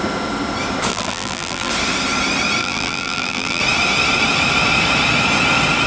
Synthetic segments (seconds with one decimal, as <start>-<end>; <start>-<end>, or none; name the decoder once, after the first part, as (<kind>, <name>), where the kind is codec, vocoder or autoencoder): 0.9-1.7 (vocoder, BigVGAN v2); 2.6-3.6